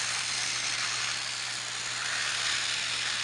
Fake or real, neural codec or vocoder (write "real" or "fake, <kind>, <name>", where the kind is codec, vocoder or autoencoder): real